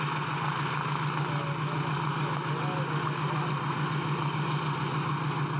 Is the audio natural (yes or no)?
yes